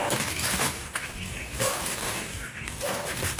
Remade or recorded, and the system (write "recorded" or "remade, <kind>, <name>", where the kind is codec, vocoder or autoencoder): remade, codec, DAC